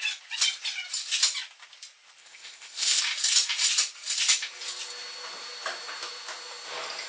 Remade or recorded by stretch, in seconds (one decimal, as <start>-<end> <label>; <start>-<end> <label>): 0.0-2.2 recorded; 2.2-3.0 remade; 3.0-7.1 recorded